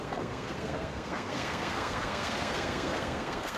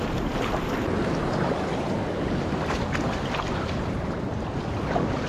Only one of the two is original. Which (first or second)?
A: second